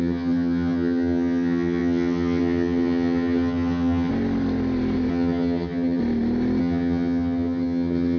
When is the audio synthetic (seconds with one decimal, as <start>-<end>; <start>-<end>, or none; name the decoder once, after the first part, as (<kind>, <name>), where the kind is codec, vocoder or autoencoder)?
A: 0.0-4.1 (vocoder, HiFi-GAN); 5.1-6.0; 6.6-8.2